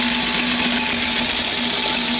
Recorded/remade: recorded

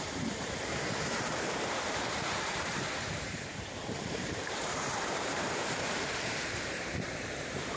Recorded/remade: remade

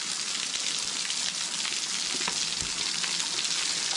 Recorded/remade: recorded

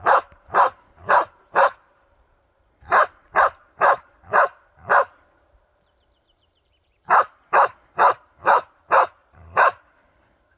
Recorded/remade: remade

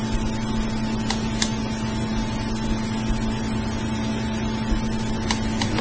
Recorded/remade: recorded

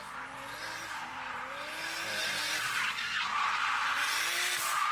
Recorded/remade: recorded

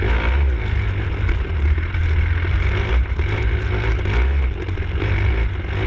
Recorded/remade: recorded